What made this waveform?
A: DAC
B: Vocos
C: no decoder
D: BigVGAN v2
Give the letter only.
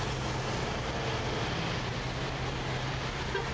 C